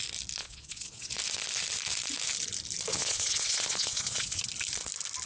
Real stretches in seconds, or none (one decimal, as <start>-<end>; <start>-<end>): 0.0-0.4; 1.1-2.9; 4.4-5.3